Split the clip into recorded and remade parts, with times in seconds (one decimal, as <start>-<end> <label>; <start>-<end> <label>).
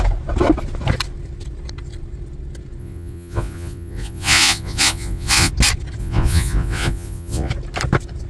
0.0-2.8 recorded; 2.8-5.5 remade; 5.5-6.0 recorded; 6.0-7.5 remade; 7.5-8.3 recorded